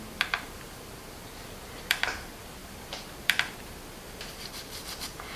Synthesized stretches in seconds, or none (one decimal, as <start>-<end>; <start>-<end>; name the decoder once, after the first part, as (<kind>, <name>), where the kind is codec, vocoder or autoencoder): none